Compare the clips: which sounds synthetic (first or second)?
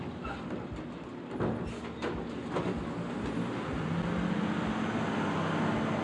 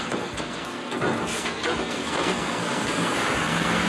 second